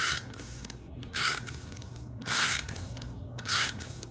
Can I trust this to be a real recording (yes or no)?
no